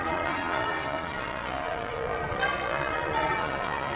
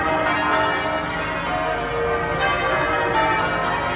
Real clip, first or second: second